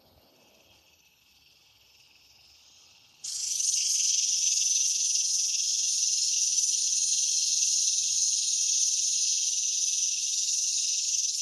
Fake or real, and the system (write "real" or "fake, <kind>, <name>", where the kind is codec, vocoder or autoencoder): fake, codec, HILCodec